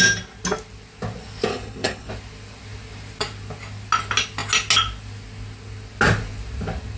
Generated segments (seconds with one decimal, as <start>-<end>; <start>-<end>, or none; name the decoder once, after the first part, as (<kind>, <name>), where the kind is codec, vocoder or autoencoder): 1.5-2.1 (codec, HILCodec)